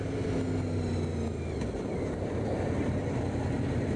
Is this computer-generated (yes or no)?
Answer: no